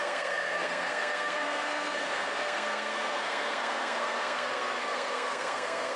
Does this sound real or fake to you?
fake